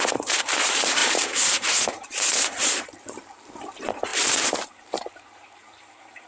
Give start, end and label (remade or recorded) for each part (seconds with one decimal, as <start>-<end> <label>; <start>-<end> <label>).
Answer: 0.0-6.3 remade